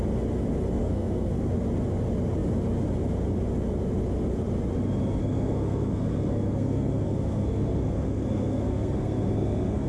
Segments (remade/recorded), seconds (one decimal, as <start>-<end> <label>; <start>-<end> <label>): 0.0-0.8 recorded; 0.8-1.5 remade; 1.5-5.2 recorded; 5.2-9.9 remade